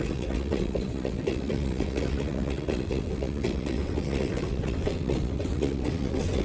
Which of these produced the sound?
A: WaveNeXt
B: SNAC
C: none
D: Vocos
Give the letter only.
A